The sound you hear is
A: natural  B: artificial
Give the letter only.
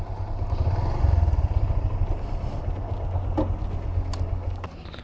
A